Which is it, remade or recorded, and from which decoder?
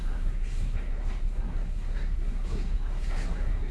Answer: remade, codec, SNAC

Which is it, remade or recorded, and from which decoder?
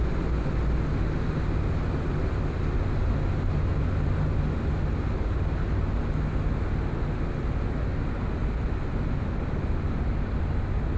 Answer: recorded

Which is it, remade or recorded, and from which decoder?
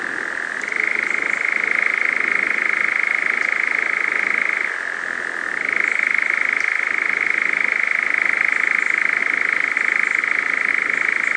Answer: recorded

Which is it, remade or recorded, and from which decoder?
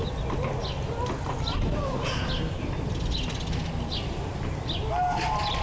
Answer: recorded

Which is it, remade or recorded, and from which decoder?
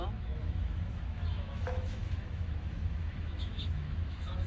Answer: remade, autoencoder, DAC-VAE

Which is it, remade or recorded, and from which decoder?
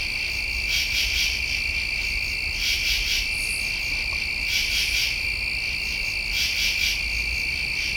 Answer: recorded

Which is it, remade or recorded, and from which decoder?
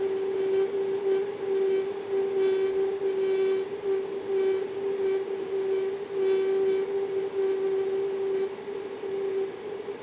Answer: recorded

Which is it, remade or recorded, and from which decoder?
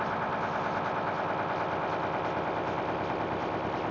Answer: recorded